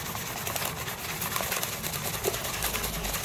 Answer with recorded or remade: recorded